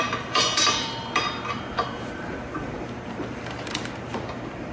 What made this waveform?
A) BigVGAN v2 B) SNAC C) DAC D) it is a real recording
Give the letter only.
A